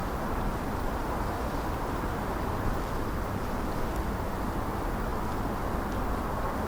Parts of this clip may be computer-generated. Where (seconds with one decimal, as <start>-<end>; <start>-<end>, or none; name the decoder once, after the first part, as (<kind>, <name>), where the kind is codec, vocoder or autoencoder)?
0.0-4.0 (vocoder, BigVGAN v2)

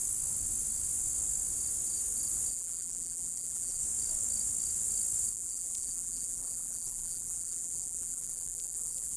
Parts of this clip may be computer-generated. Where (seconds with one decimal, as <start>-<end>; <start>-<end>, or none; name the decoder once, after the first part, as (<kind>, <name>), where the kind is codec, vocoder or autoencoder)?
2.5-3.8 (vocoder, BigVGAN v2); 5.3-9.2

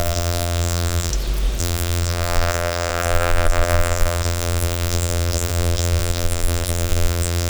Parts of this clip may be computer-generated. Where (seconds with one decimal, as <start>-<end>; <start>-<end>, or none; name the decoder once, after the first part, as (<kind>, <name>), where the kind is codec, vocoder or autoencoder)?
0.0-1.1 (vocoder, BigVGAN v2); 1.6-7.5

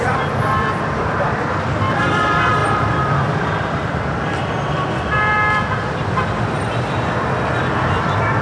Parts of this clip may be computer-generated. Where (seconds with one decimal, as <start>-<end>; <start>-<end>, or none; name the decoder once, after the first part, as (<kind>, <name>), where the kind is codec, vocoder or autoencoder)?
0.0-8.4 (vocoder, BigVGAN v2)

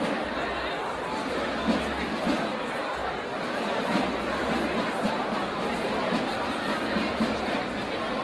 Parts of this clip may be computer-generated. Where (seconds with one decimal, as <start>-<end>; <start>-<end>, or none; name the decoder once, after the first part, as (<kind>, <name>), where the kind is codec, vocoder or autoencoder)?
0.0-8.2 (vocoder, BigVGAN v2)

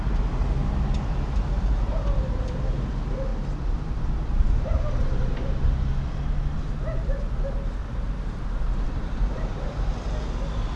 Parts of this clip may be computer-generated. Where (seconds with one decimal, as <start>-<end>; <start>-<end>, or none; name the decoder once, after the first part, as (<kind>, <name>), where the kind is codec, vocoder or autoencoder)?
0.6-1.9 (vocoder, BigVGAN v2); 3.3-6.8; 7.8-10.1

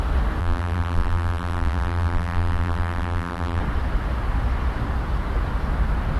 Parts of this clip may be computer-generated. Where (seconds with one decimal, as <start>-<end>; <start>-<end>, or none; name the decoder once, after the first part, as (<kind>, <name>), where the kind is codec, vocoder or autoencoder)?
0.4-3.6 (vocoder, BigVGAN v2)

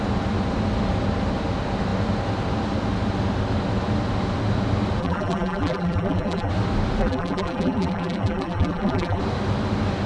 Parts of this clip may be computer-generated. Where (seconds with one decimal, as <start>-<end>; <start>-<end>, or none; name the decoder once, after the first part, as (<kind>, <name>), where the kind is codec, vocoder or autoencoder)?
5.0-6.5 (vocoder, BigVGAN v2); 7.0-9.2